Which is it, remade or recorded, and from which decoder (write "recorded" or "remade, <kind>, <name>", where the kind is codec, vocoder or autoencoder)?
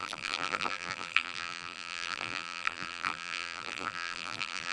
remade, vocoder, BigVGAN v2